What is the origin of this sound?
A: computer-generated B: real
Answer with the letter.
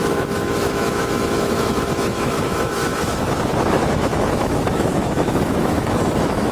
A